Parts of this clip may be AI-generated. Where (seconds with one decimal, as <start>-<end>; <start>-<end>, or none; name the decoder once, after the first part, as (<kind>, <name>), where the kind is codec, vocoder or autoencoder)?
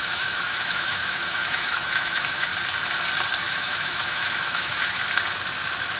0.0-2.5 (autoencoder, DAC-VAE); 3.4-5.0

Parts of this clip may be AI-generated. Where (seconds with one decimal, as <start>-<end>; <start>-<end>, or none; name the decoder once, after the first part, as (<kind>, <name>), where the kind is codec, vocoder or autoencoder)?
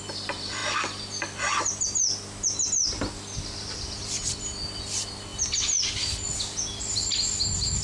none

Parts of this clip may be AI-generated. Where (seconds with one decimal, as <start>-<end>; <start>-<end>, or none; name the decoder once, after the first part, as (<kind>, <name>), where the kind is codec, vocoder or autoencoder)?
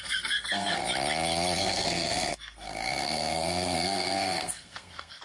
0.0-0.8 (codec, SNAC); 1.6-5.2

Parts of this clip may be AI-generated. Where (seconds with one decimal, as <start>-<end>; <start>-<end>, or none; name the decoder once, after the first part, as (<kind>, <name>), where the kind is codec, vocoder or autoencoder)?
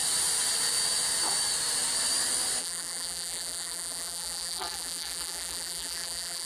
2.6-6.5 (vocoder, BigVGAN v2)